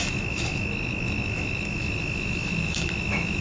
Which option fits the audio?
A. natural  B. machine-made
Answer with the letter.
B